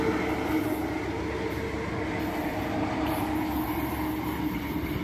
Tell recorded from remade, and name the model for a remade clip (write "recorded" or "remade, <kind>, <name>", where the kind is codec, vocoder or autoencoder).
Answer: recorded